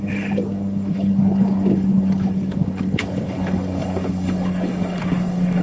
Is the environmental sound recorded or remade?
remade